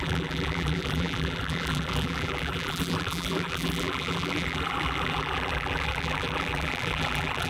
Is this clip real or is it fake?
fake